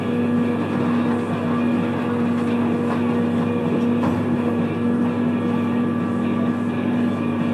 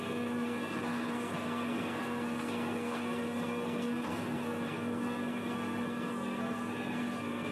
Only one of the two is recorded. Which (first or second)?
first